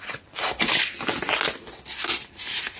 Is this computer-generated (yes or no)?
no